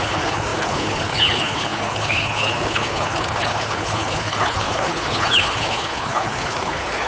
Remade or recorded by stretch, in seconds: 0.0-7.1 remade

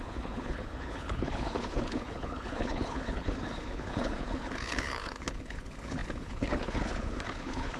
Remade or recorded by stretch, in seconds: 0.0-7.8 remade

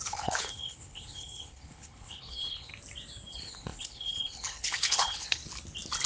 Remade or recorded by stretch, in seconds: 0.0-2.7 remade; 2.7-3.3 recorded; 3.3-5.4 remade; 5.4-6.1 recorded

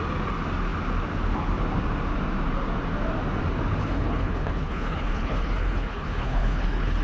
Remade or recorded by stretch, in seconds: 0.0-3.8 recorded; 3.8-7.0 remade

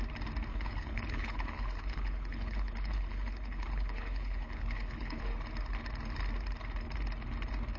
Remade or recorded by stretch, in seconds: 0.0-0.5 recorded; 0.5-5.2 remade; 5.2-7.8 recorded

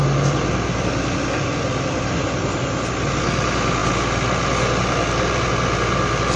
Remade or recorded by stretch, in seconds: 0.0-6.4 recorded

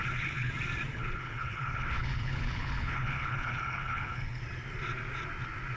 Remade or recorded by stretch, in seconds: 0.0-0.5 remade; 0.5-0.9 recorded; 0.9-4.4 remade; 4.4-5.8 recorded

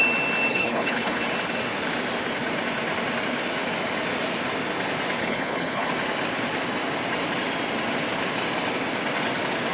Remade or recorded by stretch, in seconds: 0.0-0.5 recorded; 0.5-1.2 remade; 1.2-5.2 recorded; 5.2-5.9 remade; 5.9-9.7 recorded